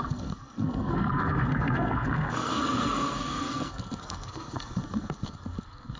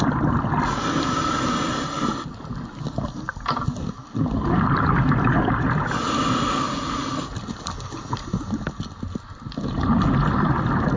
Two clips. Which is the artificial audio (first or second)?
first